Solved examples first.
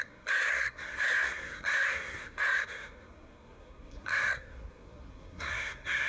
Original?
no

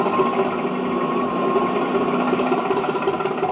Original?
yes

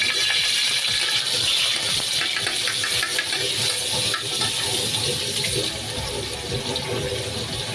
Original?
yes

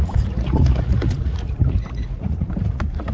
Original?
no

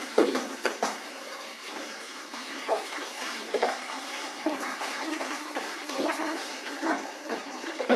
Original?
no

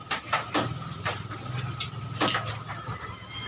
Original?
yes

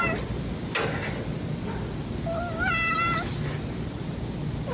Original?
yes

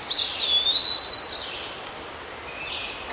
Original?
yes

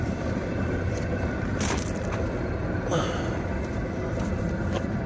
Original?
yes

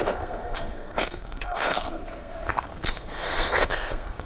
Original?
no